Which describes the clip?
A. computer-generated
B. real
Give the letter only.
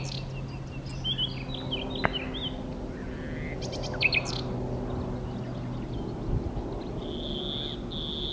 B